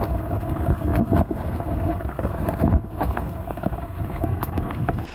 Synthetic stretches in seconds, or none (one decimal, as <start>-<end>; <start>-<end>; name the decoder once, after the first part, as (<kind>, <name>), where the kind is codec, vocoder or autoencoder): 0.0-5.1 (codec, SNAC)